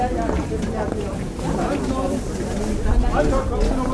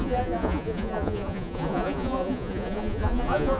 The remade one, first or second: second